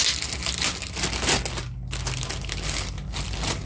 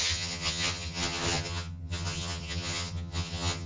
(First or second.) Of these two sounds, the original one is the first